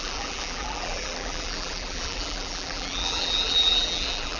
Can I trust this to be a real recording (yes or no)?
no